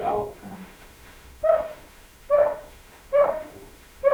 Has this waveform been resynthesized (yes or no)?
yes